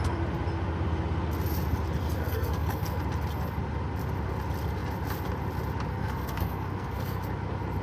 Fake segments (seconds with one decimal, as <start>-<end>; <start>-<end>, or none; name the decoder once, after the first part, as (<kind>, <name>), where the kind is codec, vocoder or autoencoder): 2.0-3.0 (codec, SNAC); 5.9-7.2